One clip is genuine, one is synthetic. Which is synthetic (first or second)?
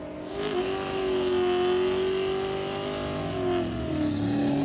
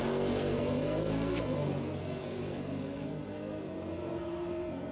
second